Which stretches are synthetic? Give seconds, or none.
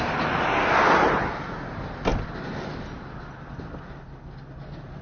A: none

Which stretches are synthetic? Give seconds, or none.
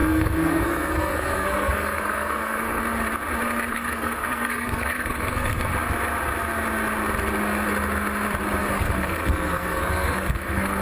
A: 0.0-2.8; 3.7-5.7; 8.6-10.8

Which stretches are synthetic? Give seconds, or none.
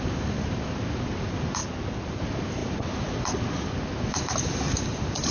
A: 0.0-1.6; 2.2-5.3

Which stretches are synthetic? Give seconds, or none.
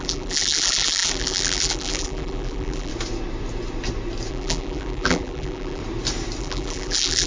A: 0.0-2.9; 4.3-5.8; 6.4-7.3